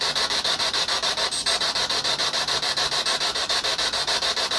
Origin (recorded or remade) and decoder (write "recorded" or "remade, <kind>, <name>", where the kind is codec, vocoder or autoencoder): remade, vocoder, BigVGAN v2